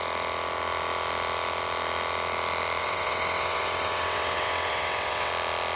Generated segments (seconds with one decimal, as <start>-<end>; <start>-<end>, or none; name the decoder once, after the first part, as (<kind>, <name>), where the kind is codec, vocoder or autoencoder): 2.8-5.3 (vocoder, WaveNeXt)